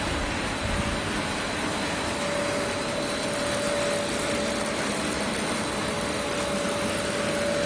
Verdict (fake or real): real